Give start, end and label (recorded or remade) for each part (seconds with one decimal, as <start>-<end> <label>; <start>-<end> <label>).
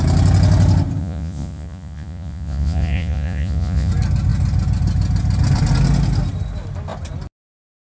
0.0-1.0 recorded; 1.0-3.9 remade; 3.9-7.9 recorded